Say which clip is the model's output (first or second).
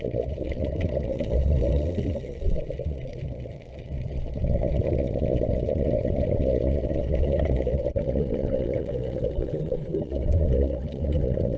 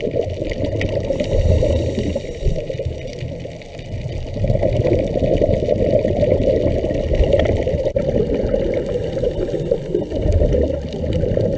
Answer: first